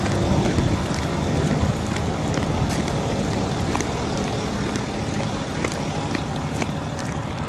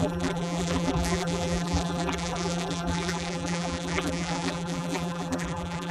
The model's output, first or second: second